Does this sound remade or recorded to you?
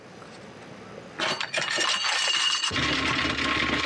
recorded